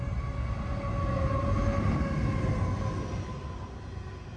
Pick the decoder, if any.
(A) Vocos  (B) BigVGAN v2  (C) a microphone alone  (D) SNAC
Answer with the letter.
C